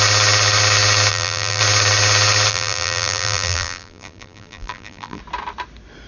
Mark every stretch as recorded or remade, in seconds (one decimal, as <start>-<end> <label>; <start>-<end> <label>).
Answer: 0.0-1.1 recorded; 1.1-1.6 remade; 1.6-2.5 recorded; 2.5-5.2 remade; 5.2-6.1 recorded